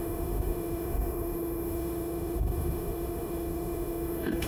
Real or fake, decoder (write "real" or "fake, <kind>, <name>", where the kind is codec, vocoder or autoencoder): fake, autoencoder, DAC-VAE